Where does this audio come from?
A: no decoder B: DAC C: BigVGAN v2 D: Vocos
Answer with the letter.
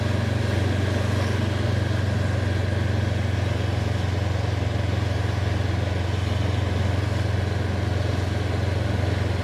A